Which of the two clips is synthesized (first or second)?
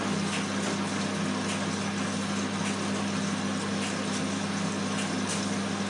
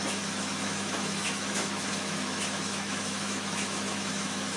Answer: second